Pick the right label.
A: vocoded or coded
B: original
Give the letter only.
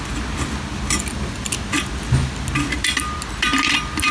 B